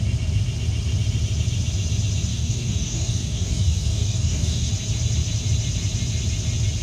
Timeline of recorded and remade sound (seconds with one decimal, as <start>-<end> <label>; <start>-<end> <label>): 0.0-2.3 recorded; 2.3-4.7 remade; 4.7-6.8 recorded

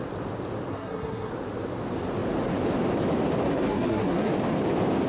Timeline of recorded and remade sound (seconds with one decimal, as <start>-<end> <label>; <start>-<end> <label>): 0.0-0.7 recorded; 0.7-1.3 remade; 1.3-3.5 recorded; 3.5-4.3 remade; 4.3-5.1 recorded